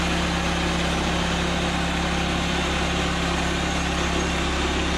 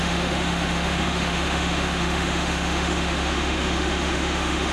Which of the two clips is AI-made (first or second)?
second